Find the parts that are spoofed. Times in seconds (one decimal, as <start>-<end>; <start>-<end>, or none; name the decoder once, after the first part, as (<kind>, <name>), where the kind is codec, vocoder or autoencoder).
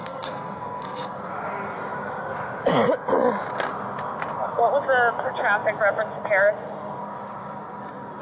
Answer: 0.0-1.2 (codec, SNAC)